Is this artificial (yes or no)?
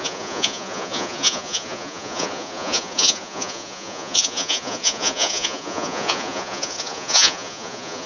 yes